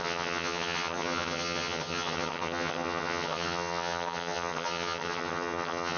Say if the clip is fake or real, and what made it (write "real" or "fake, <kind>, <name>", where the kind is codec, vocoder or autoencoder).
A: fake, vocoder, HiFi-GAN